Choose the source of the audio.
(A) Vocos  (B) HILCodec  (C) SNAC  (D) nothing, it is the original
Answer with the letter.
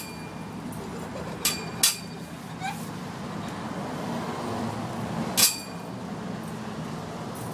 D